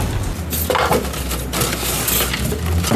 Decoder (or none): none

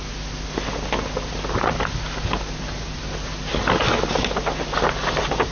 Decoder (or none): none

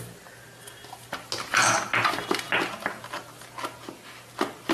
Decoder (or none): none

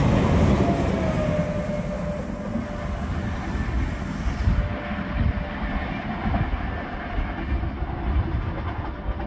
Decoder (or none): none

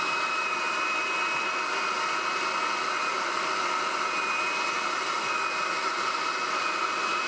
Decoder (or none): none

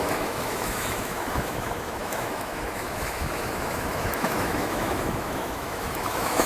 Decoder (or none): autoencoder, DAC-VAE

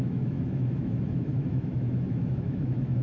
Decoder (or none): autoencoder, DAC-VAE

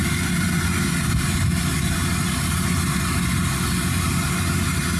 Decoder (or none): none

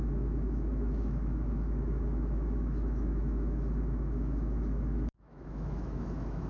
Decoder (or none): autoencoder, DAC-VAE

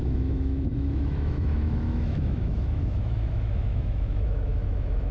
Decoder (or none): autoencoder, DAC-VAE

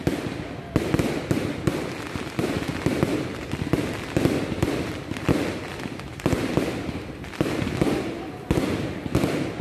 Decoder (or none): none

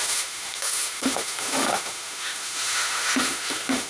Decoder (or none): autoencoder, DAC-VAE